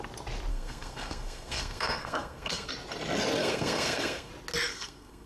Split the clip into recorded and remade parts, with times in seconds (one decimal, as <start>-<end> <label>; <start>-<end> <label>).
0.0-0.5 recorded; 0.5-2.7 remade; 2.7-3.4 recorded; 3.4-4.3 remade; 4.3-4.7 recorded; 4.7-5.3 remade